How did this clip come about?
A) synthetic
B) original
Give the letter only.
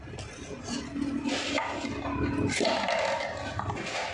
B